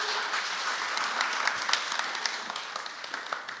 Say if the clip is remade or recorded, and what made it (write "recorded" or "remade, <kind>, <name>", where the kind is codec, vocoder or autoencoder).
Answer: recorded